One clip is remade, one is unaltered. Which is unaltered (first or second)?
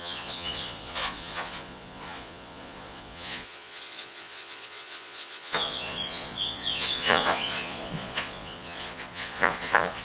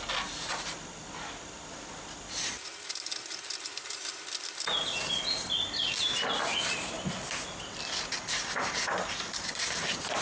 second